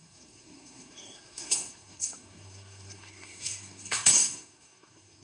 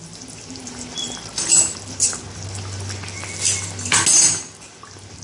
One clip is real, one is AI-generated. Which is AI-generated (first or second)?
first